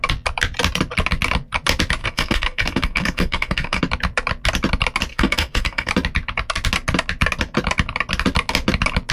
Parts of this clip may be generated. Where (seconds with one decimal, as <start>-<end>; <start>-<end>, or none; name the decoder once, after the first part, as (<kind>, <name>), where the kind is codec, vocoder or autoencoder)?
2.0-3.8 (codec, SNAC); 5.1-5.9